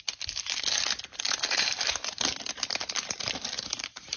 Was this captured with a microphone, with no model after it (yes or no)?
yes